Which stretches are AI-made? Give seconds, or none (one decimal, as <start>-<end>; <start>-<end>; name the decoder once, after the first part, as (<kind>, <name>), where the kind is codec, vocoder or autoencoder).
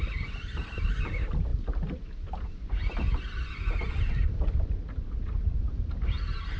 none